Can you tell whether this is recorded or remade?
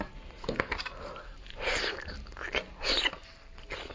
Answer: recorded